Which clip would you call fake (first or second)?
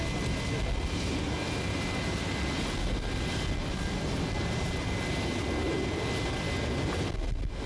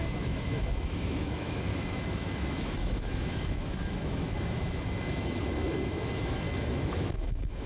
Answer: second